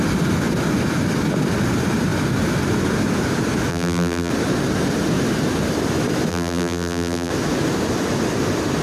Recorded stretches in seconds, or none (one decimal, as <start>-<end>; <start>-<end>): 0.0-3.7; 4.3-6.3; 7.3-8.8